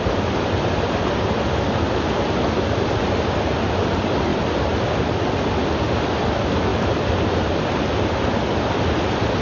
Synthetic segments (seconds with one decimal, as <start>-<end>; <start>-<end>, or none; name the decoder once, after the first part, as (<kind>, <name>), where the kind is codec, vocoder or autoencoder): none